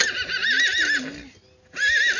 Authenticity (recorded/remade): recorded